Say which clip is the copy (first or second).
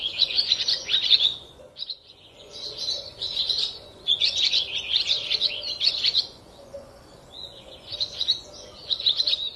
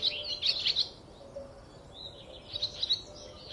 first